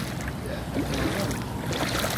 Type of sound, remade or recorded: recorded